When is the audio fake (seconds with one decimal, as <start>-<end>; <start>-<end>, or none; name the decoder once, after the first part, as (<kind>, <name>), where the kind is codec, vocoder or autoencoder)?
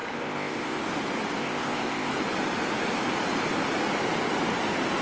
0.0-0.8 (codec, ZipCodec); 1.4-2.1